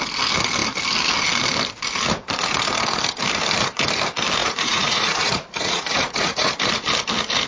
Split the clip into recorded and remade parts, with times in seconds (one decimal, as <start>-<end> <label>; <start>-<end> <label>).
0.0-4.4 recorded; 4.4-6.5 remade; 6.5-7.5 recorded